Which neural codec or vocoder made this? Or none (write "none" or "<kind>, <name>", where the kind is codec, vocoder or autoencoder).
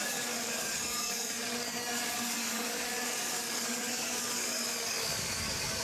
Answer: codec, DAC